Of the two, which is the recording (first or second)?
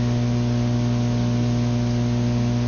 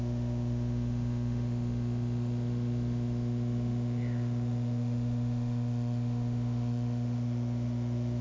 first